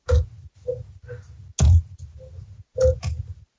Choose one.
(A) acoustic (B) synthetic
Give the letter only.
A